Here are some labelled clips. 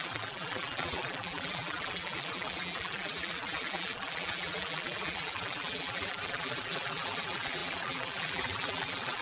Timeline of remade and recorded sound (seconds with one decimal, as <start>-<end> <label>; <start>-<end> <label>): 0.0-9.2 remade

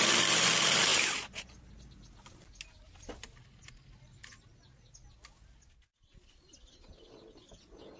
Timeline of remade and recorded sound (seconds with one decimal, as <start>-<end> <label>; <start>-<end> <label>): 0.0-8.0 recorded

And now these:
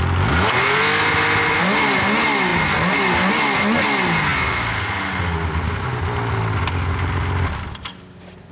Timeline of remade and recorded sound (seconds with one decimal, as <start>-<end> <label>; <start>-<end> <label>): 0.0-8.5 recorded

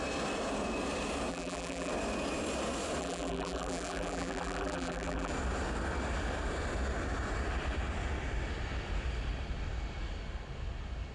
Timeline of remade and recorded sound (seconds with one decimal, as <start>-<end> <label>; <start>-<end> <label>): 0.0-1.3 recorded; 1.3-1.9 remade; 1.9-3.0 recorded; 3.0-5.3 remade; 5.3-11.1 recorded

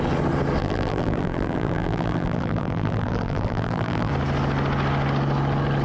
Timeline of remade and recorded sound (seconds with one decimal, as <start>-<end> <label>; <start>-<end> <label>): 0.0-0.6 recorded; 0.6-4.1 remade; 4.1-5.8 recorded

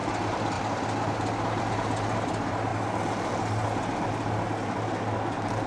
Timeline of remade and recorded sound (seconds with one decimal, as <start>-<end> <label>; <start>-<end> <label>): 0.0-5.7 recorded